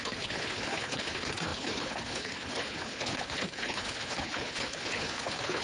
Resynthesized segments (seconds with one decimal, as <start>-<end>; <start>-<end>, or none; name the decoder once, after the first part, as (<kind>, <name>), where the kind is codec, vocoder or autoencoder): 0.0-5.6 (codec, HILCodec)